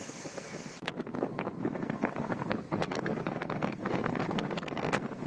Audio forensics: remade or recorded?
remade